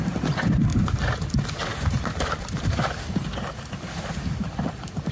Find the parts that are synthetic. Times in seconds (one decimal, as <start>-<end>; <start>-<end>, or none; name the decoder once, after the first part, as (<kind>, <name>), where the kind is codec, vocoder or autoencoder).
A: none